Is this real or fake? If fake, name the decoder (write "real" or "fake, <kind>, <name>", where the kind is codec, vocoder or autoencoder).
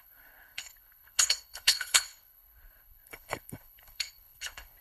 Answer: fake, codec, HILCodec